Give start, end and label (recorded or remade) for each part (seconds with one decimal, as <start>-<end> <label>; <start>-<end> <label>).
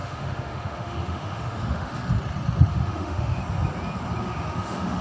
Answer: 0.0-2.0 remade; 2.0-2.7 recorded; 2.7-3.4 remade; 3.4-4.2 recorded; 4.2-5.0 remade